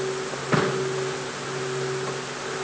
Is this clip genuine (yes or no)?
yes